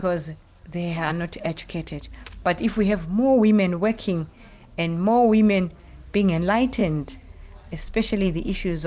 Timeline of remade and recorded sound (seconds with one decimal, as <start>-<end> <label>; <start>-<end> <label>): 0.0-6.8 recorded; 6.8-8.9 remade